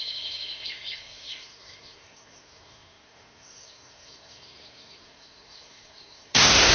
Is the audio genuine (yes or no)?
no